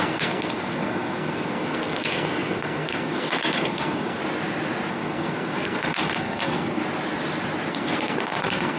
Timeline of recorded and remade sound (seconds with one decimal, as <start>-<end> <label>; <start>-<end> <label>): 0.0-4.2 remade; 4.2-4.9 recorded; 4.9-6.8 remade; 6.8-7.7 recorded; 7.7-8.8 remade